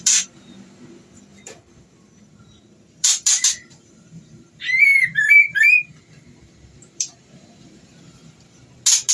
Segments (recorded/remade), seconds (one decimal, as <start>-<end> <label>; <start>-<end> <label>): 0.0-8.2 remade; 8.2-9.1 recorded